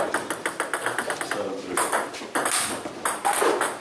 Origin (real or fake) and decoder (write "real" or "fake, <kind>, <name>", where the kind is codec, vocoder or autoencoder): real